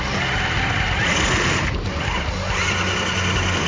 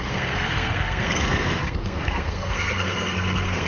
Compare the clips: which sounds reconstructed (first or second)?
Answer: second